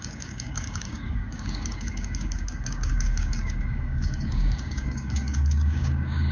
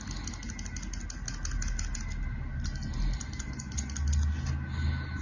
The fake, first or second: first